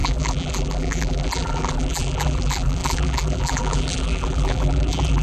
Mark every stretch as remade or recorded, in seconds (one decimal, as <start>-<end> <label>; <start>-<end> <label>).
0.0-5.2 remade